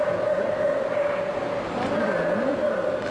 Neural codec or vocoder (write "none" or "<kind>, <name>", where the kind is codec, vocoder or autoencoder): none